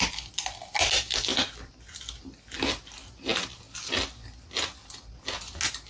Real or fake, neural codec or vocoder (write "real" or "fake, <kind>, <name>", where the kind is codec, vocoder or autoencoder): real